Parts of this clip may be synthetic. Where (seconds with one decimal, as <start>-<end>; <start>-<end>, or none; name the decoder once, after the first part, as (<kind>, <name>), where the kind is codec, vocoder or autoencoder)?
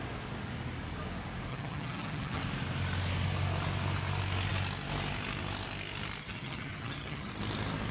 1.5-2.4 (vocoder, HiFi-GAN); 6.2-7.3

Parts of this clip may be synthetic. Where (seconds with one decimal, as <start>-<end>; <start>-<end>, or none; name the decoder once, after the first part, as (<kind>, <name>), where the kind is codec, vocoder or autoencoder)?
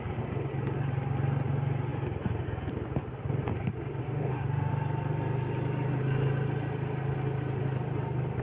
4.0-4.7 (autoencoder, DAC-VAE)